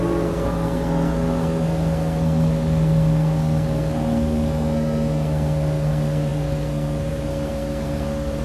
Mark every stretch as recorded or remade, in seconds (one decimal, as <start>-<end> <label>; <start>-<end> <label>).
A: 0.0-8.4 remade